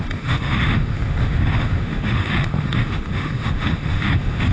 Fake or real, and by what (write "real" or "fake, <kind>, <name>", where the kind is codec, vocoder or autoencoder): fake, autoencoder, DAC-VAE